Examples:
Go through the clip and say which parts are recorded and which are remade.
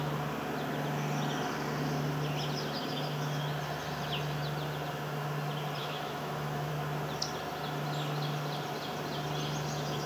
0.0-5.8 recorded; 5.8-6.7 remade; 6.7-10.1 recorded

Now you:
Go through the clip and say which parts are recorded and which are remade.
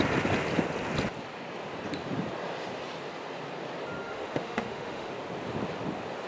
0.0-4.0 recorded; 4.0-5.1 remade; 5.1-6.3 recorded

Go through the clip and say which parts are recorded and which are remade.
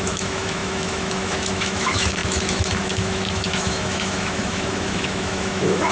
0.0-5.9 remade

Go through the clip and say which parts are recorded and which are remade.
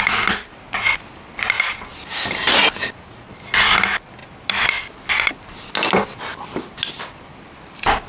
0.0-8.1 recorded